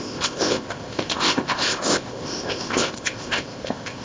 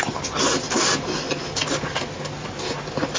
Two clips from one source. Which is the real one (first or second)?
second